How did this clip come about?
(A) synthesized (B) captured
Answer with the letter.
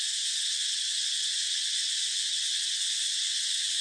A